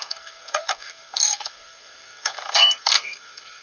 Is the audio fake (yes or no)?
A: yes